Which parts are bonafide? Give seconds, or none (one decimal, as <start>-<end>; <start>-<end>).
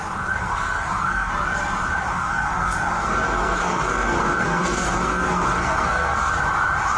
0.0-0.4; 1.3-2.1; 6.3-7.0